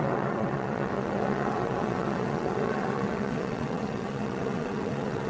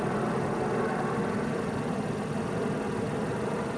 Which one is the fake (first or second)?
first